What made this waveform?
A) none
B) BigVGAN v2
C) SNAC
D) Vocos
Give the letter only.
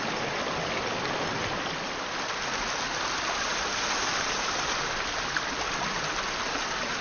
A